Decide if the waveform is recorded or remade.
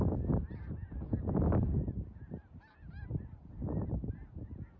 recorded